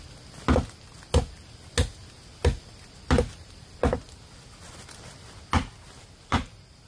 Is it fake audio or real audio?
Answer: real